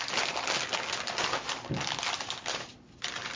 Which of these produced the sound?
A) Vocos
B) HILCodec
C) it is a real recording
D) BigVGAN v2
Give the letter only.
C